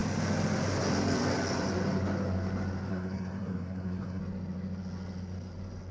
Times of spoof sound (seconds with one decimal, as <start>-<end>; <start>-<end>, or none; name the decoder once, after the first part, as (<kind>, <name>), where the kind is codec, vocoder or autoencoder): 2.9-4.2 (codec, SNAC)